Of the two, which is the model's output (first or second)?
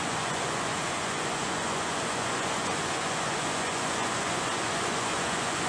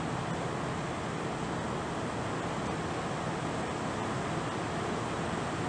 first